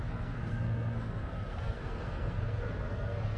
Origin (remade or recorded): remade